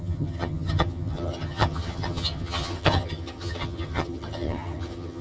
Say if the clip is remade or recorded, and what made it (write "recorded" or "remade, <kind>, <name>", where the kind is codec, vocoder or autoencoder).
remade, vocoder, HiFi-GAN